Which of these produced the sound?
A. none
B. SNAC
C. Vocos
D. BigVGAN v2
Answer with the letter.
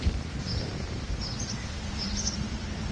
D